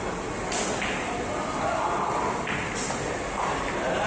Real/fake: real